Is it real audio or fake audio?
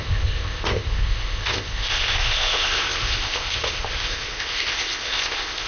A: fake